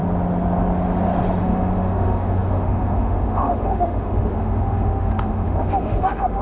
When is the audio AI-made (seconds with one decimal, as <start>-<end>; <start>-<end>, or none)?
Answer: 1.4-6.4

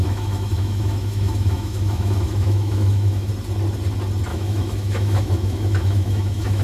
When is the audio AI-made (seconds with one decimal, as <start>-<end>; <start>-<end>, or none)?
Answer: 0.0-3.3; 4.3-6.6

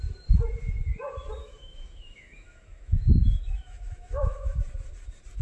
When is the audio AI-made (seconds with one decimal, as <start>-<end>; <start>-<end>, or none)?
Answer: 1.4-4.6

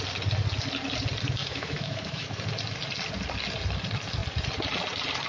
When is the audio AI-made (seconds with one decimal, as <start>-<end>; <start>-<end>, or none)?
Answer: 1.4-2.4